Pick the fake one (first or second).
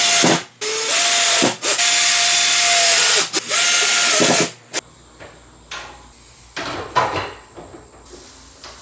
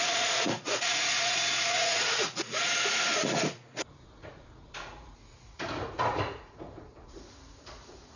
second